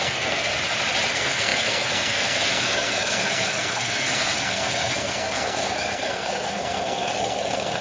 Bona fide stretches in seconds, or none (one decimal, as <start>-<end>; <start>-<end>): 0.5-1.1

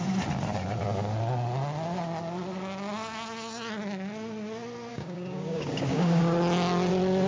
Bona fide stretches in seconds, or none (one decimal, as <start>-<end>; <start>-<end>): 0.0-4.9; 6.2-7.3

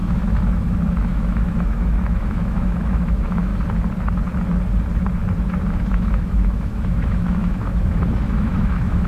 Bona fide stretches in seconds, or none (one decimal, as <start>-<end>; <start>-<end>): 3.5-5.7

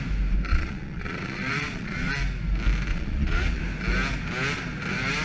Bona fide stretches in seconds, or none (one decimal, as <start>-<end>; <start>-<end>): 0.0-0.5; 2.1-2.9; 3.6-5.2

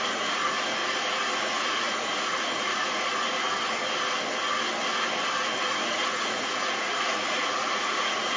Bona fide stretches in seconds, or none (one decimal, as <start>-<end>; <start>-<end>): 0.8-1.4; 3.1-5.7